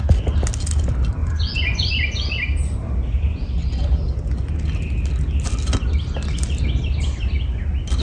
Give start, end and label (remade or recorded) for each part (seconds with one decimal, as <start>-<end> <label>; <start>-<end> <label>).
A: 0.0-1.2 recorded; 1.2-1.9 remade; 1.9-8.0 recorded